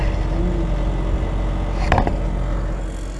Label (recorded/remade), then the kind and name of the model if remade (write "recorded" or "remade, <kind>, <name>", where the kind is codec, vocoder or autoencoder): recorded